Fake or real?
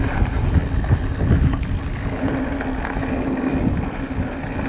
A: real